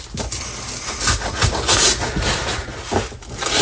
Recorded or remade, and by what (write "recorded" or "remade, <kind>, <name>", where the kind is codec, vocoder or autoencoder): recorded